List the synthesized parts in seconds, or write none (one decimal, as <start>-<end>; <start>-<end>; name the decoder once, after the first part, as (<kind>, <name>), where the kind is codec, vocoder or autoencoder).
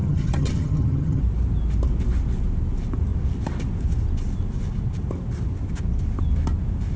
0.0-1.2 (vocoder, HiFi-GAN)